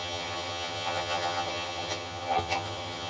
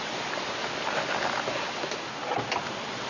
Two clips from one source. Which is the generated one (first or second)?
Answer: first